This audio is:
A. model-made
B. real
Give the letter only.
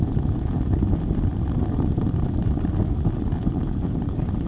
B